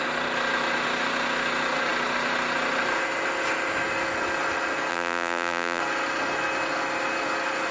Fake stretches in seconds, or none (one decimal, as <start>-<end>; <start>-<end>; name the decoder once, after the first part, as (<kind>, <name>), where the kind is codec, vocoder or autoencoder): 4.9-5.8 (vocoder, BigVGAN v2)